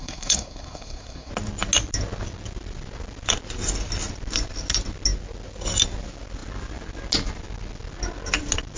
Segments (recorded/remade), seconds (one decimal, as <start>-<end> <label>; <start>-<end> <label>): 0.0-1.3 remade; 1.3-8.8 recorded